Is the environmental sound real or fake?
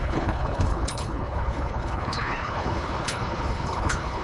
fake